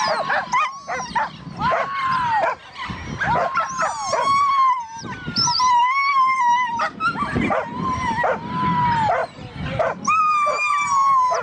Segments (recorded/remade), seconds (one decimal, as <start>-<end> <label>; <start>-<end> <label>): 0.0-11.4 recorded